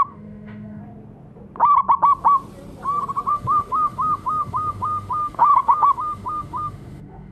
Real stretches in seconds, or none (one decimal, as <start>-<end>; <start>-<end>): 0.8-3.3